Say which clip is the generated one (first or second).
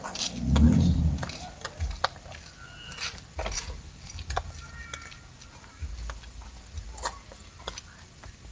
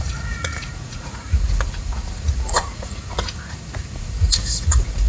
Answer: second